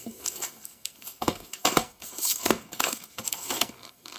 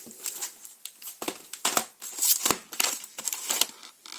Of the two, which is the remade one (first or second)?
first